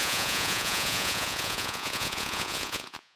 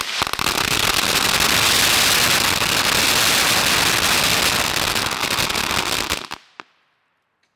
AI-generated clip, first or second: first